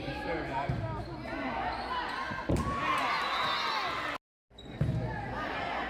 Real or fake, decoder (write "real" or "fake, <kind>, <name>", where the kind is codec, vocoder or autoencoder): real